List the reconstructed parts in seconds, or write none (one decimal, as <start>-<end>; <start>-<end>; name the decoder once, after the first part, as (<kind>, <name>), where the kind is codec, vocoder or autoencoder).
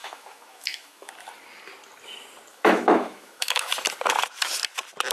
0.0-1.1 (autoencoder, DAC-VAE); 2.5-3.7